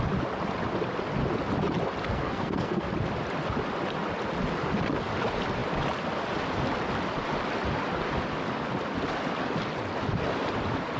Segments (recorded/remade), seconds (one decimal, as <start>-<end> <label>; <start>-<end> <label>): 0.0-2.1 recorded; 2.1-2.9 remade; 2.9-11.0 recorded